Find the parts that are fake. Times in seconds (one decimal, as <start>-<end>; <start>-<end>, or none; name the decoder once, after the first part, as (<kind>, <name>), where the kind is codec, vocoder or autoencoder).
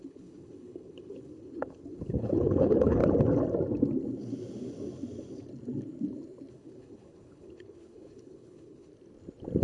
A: 0.0-3.0 (codec, HILCodec); 6.5-8.9